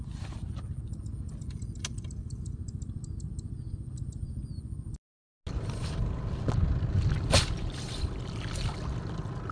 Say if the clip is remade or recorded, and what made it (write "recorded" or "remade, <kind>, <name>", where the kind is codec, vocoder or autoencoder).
recorded